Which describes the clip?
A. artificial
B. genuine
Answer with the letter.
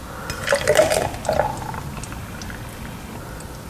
B